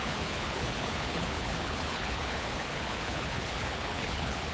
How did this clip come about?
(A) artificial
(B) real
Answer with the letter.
A